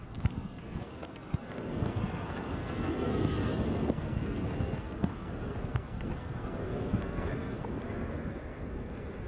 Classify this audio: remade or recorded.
remade